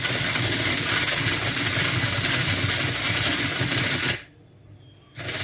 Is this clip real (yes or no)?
yes